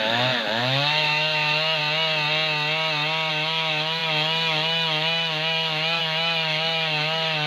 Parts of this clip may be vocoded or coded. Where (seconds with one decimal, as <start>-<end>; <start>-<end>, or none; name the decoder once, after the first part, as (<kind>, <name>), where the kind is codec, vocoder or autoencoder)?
0.0-1.8 (autoencoder, DAC-VAE); 3.3-7.5